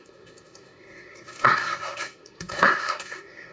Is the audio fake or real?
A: fake